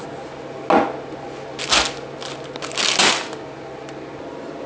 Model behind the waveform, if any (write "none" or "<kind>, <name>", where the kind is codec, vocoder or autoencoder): none